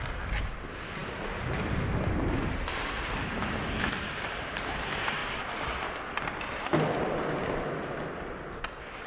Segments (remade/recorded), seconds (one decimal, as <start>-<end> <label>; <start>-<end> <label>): 0.0-9.1 recorded